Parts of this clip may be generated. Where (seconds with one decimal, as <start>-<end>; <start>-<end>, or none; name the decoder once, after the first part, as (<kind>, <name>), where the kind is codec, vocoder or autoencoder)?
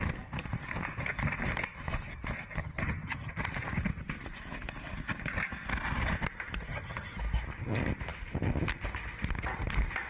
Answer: 2.6-3.4 (vocoder, HiFi-GAN); 6.7-7.2